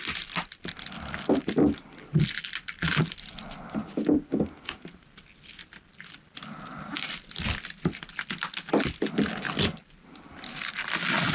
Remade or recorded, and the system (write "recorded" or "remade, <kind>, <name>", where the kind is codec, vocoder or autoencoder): recorded